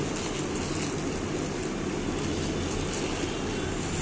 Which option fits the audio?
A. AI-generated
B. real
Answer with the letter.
B